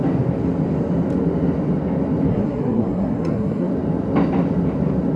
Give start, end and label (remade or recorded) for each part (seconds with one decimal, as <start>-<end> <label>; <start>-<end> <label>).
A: 0.0-2.3 recorded; 2.3-3.7 remade; 3.7-5.2 recorded